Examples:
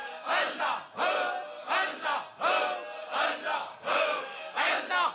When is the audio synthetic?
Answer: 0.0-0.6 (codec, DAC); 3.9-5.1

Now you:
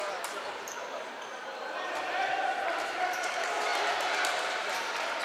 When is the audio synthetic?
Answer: 0.0-5.2 (vocoder, BigVGAN v2)

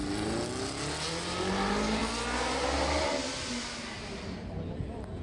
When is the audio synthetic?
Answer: none

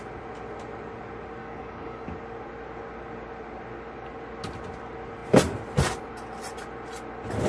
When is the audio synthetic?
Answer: 1.4-2.1 (codec, DAC)

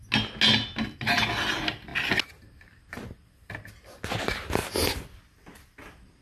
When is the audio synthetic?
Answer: none

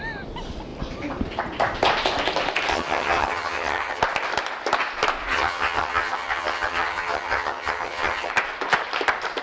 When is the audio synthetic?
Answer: 2.7-4.0 (vocoder, HiFi-GAN); 5.3-8.3